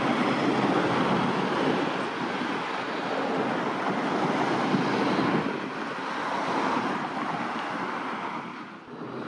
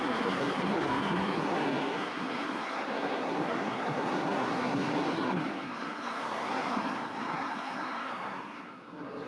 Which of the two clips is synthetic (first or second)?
second